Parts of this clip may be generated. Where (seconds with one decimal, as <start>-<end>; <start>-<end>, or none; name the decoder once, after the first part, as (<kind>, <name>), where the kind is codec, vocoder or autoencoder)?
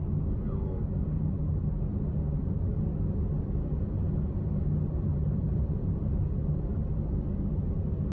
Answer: 5.1-6.7 (vocoder, BigVGAN v2)